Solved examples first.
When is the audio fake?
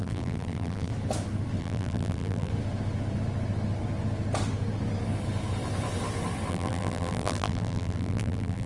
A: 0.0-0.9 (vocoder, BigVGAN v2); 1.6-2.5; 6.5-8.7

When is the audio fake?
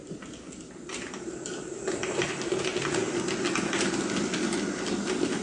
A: 0.7-2.7 (vocoder, BigVGAN v2)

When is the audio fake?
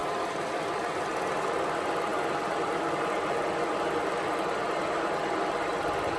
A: none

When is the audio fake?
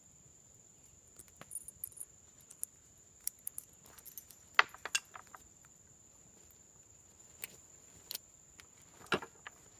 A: none